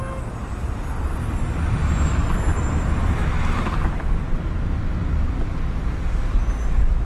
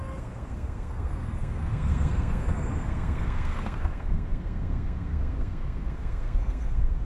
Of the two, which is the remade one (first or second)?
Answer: second